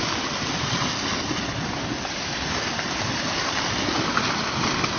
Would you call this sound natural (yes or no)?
yes